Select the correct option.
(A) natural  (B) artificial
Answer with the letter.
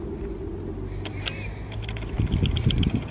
A